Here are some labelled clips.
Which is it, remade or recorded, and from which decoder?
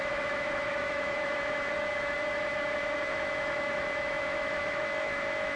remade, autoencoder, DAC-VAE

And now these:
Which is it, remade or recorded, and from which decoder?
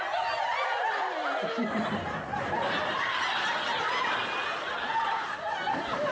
recorded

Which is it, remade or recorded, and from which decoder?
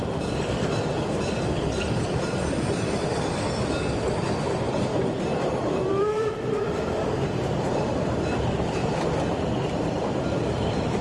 remade, vocoder, BigVGAN v2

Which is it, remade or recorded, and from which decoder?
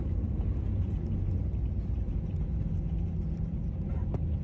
recorded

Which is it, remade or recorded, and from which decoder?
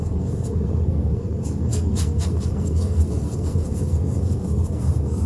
remade, codec, SNAC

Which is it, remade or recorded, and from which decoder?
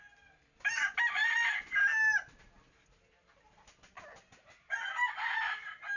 recorded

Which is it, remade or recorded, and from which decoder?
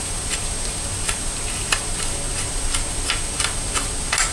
recorded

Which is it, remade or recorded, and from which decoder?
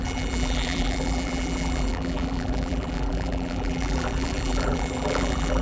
remade, vocoder, BigVGAN v2